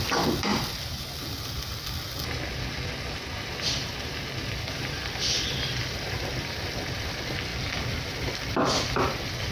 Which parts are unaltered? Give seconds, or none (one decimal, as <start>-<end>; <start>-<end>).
0.5-4.7